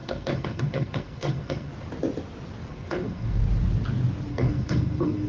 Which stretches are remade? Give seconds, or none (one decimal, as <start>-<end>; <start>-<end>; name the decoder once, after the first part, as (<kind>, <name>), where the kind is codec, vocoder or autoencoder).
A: 0.0-1.7 (codec, SNAC); 2.7-3.4; 4.3-5.3